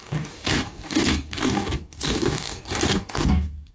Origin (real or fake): fake